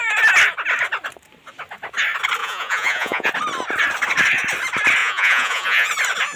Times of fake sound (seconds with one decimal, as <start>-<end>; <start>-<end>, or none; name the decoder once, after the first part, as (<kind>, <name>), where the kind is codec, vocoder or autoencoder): 2.4-3.3 (vocoder, Vocos); 5.0-5.9